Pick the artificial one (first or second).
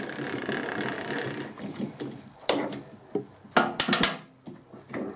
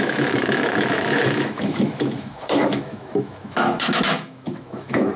second